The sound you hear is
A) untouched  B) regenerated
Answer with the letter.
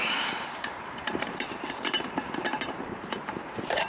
B